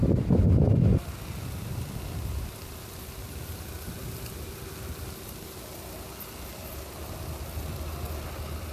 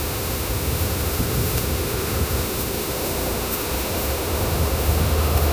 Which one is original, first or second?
first